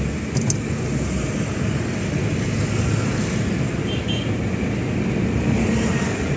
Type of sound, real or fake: real